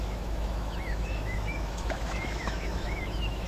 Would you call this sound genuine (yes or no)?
no